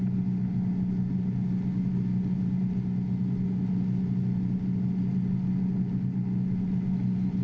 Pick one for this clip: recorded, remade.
recorded